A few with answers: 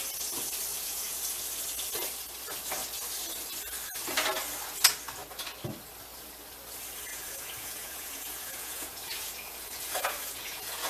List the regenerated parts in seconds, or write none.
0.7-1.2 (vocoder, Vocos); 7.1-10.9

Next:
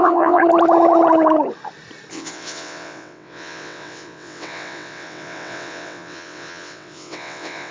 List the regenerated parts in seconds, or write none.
0.0-0.4 (vocoder, WaveNeXt); 2.1-7.7